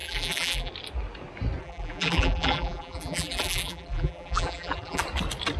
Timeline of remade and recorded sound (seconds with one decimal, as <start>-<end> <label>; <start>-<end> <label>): 0.0-0.7 remade; 0.7-1.6 recorded; 1.6-5.0 remade; 5.0-5.6 recorded